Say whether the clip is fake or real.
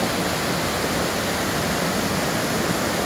real